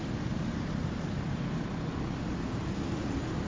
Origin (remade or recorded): recorded